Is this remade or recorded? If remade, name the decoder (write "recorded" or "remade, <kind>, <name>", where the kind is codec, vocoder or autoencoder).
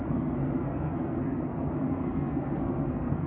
remade, codec, SNAC